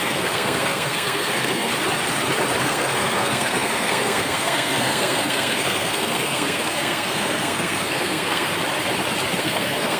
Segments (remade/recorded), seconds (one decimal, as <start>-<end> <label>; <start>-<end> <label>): 0.0-1.7 remade; 1.7-2.6 recorded; 2.6-8.5 remade; 8.5-9.4 recorded; 9.4-10.0 remade